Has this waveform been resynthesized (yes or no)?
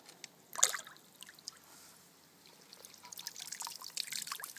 no